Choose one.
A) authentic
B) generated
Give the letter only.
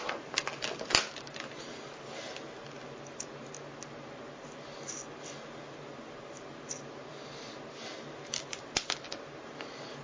A